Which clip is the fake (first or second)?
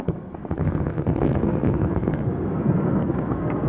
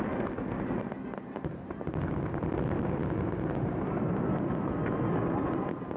first